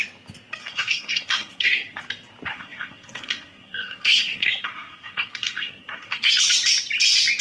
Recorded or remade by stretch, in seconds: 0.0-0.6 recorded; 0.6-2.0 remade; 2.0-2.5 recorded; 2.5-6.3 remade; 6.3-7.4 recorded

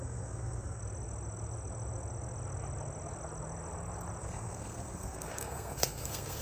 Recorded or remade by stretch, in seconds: 0.0-0.8 remade; 0.8-4.2 recorded; 4.2-6.4 remade

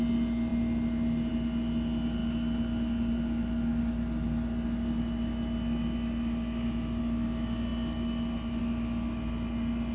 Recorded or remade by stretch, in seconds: 0.0-9.9 recorded

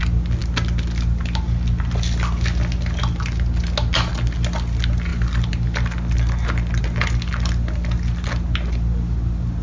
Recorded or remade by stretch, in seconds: 0.0-9.6 recorded

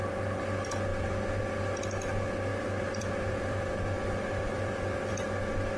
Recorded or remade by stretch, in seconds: 0.0-2.5 recorded; 2.5-5.1 remade; 5.1-5.8 recorded

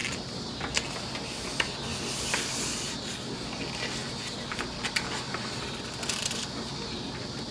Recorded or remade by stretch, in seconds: 0.0-7.5 recorded

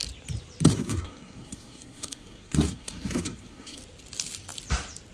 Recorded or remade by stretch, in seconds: 0.0-0.7 recorded; 0.7-3.8 remade; 3.8-5.1 recorded